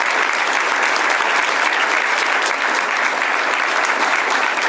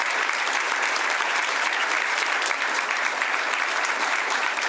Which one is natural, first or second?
first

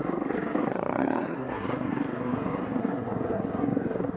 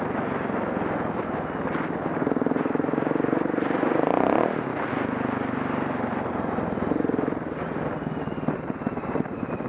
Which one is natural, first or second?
second